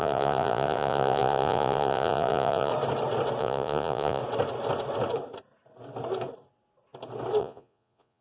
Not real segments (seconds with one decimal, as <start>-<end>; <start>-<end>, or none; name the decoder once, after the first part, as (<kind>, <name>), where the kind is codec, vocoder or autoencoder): 0.0-2.7 (vocoder, Vocos); 3.4-4.2; 7.4-8.2

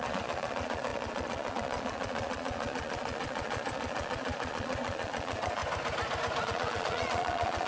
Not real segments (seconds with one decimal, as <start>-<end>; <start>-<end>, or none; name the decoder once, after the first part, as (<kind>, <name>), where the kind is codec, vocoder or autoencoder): 0.0-5.6 (vocoder, Vocos); 6.4-7.7

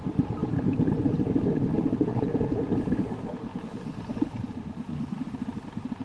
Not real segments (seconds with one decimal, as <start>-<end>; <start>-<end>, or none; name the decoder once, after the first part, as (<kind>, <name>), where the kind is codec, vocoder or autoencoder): 2.1-2.7 (vocoder, Vocos)

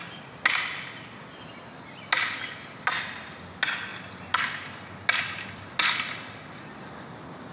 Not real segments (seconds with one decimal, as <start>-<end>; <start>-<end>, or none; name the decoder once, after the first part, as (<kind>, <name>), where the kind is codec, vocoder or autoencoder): none

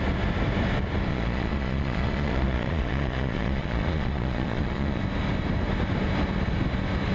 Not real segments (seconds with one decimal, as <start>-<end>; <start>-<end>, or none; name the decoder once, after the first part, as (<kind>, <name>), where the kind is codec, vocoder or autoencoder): 1.1-5.0 (vocoder, Vocos)

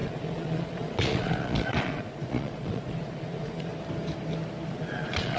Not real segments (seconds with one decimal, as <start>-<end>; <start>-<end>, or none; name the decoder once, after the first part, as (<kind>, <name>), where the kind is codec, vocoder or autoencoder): 0.0-3.7 (vocoder, Vocos); 4.7-5.4